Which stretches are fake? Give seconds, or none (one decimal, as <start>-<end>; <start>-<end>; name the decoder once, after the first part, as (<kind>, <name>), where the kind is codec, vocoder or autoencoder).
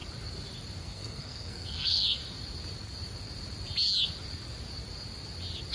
0.8-2.2 (codec, SNAC)